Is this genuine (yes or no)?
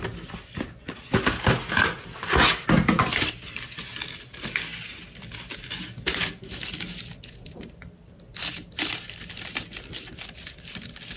yes